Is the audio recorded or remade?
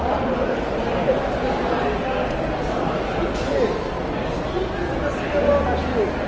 recorded